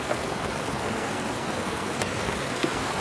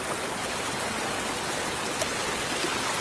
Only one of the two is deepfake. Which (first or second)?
first